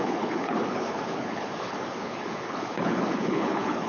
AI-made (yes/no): yes